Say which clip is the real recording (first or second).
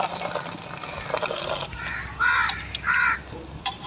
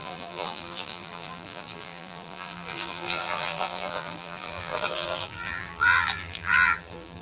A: first